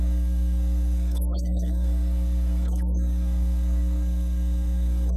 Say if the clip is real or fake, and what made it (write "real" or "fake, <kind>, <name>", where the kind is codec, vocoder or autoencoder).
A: fake, codec, SNAC